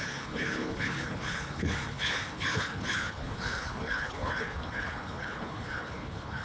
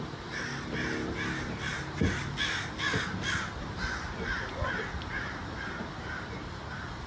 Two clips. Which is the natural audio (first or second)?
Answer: second